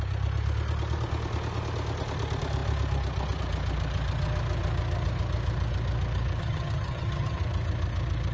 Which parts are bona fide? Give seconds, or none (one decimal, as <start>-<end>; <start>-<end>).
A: 0.0-6.4; 7.4-8.3